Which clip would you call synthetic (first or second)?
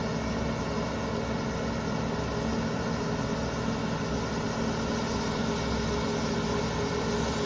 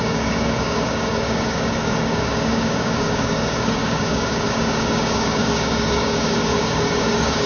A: second